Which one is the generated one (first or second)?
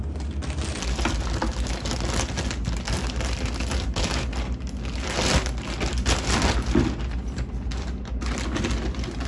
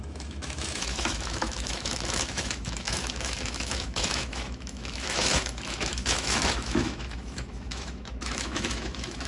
second